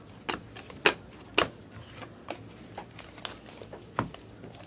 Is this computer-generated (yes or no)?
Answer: no